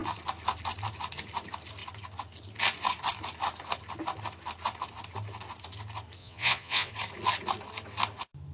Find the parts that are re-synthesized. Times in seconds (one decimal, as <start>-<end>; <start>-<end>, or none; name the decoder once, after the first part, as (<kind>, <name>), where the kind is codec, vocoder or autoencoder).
6.2-6.9 (vocoder, Vocos)